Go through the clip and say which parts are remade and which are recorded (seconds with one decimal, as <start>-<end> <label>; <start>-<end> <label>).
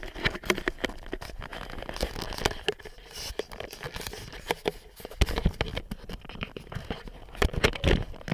0.0-8.3 recorded